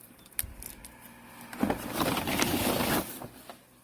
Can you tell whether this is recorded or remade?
recorded